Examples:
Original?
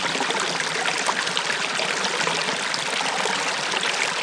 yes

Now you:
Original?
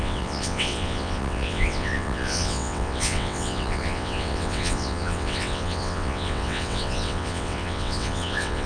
no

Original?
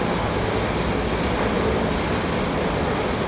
yes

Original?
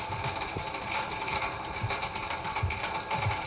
yes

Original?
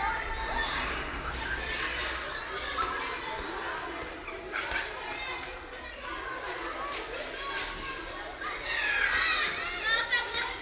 yes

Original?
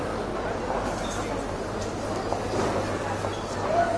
yes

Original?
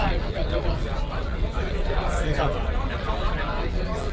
no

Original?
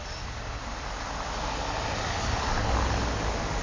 yes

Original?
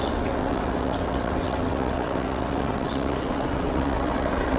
no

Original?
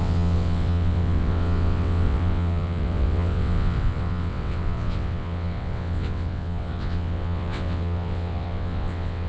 no